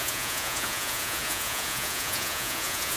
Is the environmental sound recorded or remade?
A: remade